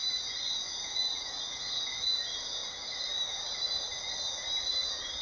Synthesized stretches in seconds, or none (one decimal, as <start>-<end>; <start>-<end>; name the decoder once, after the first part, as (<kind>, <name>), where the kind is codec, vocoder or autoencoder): 2.6-3.6 (vocoder, BigVGAN v2)